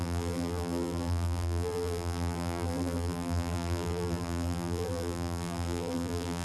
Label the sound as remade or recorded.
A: remade